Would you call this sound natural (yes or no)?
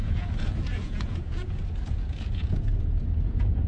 no